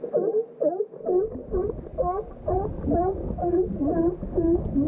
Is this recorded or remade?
recorded